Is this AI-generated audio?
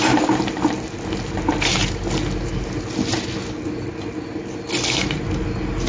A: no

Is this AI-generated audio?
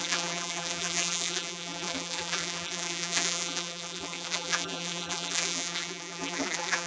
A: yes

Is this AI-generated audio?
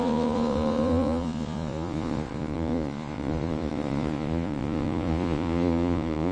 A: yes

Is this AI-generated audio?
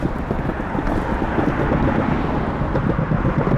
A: no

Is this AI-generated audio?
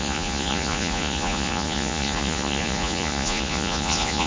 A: yes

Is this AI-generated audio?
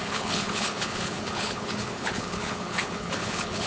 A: yes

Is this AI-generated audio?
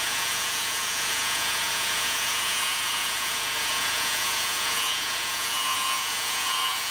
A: yes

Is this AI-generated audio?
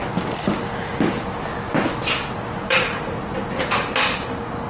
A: no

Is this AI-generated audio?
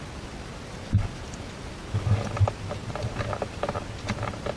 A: yes